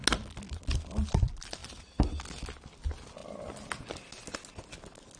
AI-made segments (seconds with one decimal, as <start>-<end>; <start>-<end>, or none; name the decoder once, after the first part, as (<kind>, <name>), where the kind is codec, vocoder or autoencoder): none